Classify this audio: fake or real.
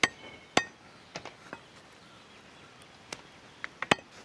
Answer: real